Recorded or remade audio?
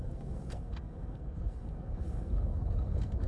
remade